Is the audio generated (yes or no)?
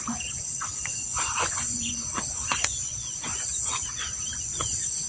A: yes